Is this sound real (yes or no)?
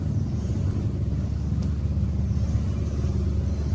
yes